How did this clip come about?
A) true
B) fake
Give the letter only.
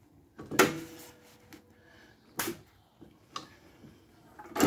A